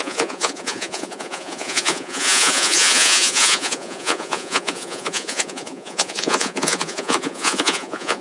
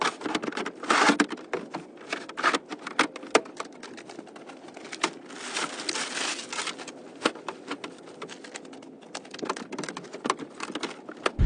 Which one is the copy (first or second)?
first